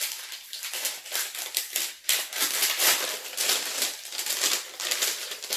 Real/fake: fake